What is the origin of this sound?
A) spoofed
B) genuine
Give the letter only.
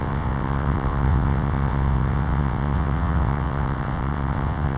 A